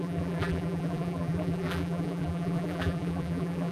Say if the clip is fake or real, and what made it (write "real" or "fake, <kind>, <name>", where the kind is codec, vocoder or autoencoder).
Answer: fake, vocoder, BigVGAN v2